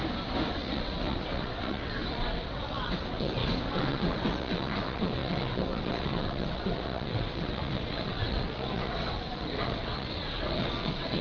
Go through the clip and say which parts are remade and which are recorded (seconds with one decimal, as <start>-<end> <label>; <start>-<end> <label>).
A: 0.0-0.5 recorded; 0.5-11.2 remade